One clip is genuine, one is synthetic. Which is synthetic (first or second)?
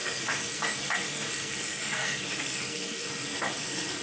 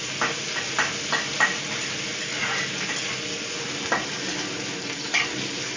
first